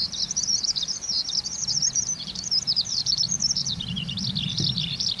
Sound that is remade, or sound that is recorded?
remade